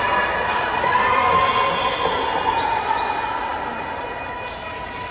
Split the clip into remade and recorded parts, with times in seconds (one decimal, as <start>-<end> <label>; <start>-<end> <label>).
0.0-0.4 recorded; 0.4-1.3 remade; 1.3-3.5 recorded; 3.5-4.0 remade; 4.0-5.1 recorded